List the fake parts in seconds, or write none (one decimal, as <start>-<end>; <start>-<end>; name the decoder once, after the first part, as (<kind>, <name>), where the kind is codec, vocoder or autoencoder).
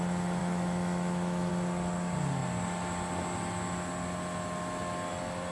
0.4-1.5 (autoencoder, DAC-VAE)